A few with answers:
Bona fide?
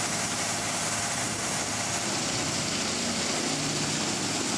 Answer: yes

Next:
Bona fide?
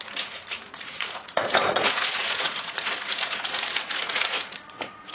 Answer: no